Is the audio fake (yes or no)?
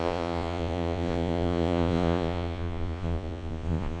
yes